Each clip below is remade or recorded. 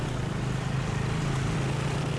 recorded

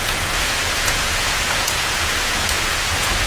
remade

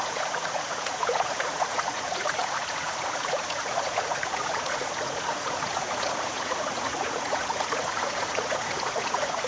remade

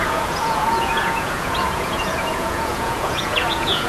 remade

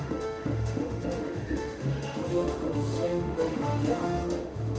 remade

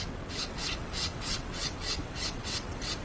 remade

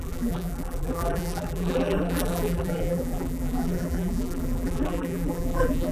remade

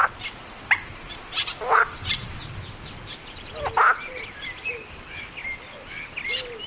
recorded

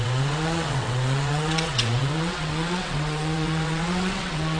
remade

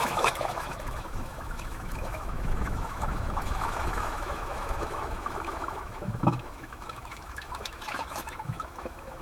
remade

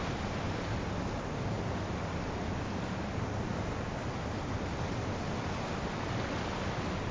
recorded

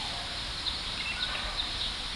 remade